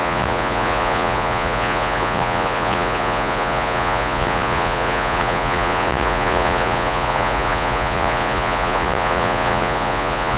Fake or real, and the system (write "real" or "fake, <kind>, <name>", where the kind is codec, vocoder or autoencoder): fake, vocoder, Vocos